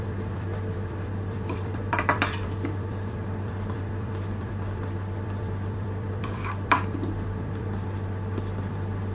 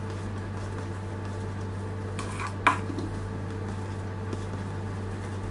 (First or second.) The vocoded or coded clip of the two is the first